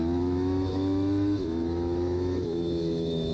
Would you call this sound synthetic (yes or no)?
yes